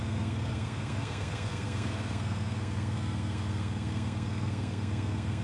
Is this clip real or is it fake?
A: fake